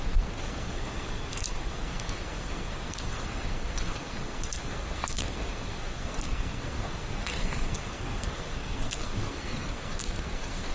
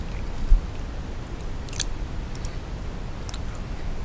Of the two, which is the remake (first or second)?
first